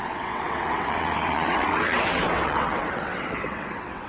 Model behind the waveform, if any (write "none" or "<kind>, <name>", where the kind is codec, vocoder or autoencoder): vocoder, WaveNeXt